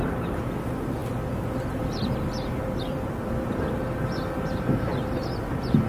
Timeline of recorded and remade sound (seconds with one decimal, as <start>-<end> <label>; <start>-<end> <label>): 0.0-1.0 recorded; 1.0-3.5 remade; 3.5-4.9 recorded; 4.9-5.4 remade; 5.4-5.9 recorded